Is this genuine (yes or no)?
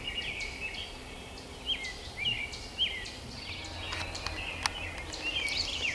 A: yes